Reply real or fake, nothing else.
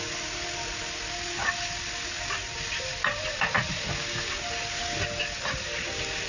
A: real